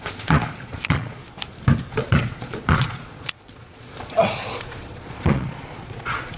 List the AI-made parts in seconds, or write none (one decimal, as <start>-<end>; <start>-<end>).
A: 0.0-1.2; 1.9-6.4